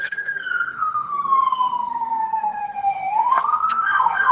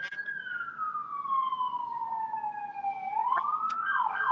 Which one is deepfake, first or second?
first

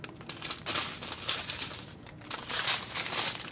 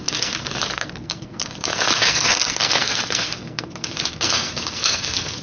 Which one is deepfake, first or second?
second